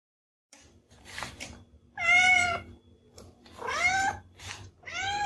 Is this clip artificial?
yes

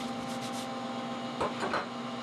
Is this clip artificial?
no